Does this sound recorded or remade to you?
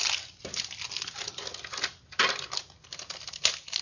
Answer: recorded